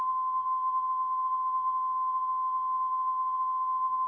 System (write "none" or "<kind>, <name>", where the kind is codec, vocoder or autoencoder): vocoder, HiFi-GAN